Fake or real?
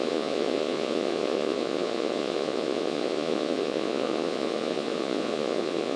fake